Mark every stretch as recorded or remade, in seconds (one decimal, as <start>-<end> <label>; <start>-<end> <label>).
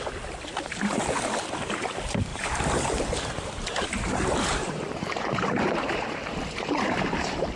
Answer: 0.0-2.3 recorded; 2.3-6.9 remade; 6.9-7.6 recorded